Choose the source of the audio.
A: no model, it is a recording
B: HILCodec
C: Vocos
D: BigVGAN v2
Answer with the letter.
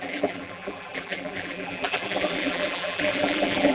D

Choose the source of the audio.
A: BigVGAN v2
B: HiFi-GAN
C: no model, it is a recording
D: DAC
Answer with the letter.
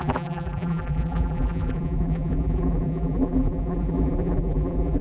A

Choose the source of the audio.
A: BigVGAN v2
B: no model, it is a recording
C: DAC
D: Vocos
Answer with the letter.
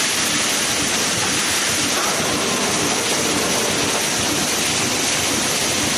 B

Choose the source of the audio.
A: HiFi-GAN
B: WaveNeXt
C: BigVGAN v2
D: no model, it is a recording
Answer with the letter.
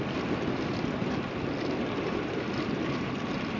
D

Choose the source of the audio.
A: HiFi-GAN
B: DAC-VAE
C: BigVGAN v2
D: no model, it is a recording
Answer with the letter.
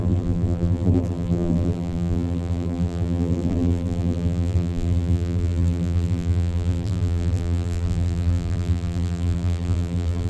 C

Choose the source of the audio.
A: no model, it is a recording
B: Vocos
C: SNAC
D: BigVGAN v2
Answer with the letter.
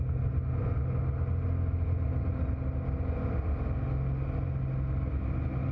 A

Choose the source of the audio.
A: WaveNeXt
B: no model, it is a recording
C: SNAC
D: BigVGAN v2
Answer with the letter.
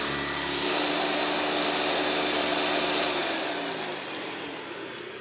B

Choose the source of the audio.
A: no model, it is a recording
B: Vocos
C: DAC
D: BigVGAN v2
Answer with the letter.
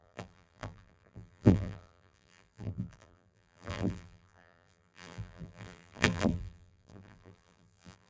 D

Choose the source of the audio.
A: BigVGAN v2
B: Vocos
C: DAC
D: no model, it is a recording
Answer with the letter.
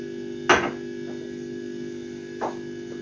D